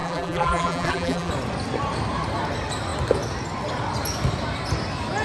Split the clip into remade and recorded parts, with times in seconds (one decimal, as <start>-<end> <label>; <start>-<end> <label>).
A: 0.0-1.3 remade; 1.3-5.2 recorded